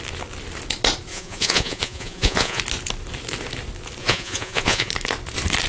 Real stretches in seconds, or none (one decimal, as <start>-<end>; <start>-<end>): 0.0-1.1; 2.6-4.0; 4.9-5.7

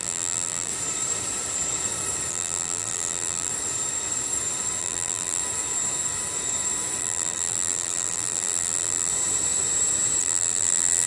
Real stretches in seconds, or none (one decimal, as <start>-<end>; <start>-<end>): 0.7-2.3; 3.5-4.8; 5.4-7.0; 9.1-10.2

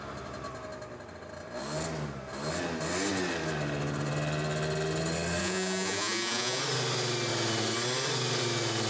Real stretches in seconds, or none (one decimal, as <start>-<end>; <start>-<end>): 0.0-5.4; 6.6-8.9

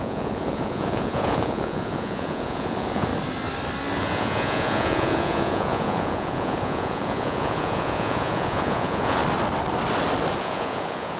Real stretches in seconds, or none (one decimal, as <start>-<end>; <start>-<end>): 3.1-4.0; 9.2-10.4

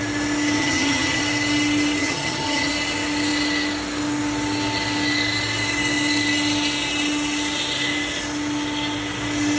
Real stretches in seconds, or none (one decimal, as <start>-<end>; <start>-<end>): 0.0-0.6; 1.2-2.0; 2.7-9.6

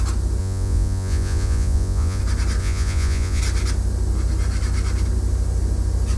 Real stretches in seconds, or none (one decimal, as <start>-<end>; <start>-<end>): 0.0-0.4; 2.2-2.6; 3.4-6.2

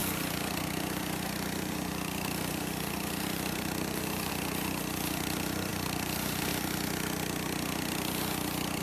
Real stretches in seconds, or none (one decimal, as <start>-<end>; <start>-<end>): 4.3-5.7; 6.5-8.8

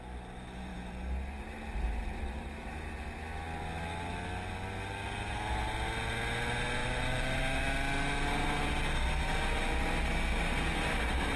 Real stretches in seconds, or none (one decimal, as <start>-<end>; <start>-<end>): 0.0-0.7; 2.7-6.8; 7.4-11.4